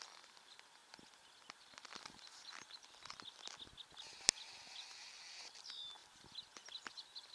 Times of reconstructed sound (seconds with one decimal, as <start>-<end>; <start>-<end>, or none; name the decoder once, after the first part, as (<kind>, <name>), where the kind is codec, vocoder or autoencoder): none